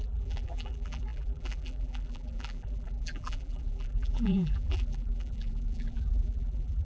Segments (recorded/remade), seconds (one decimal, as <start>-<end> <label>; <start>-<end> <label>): 0.0-6.8 remade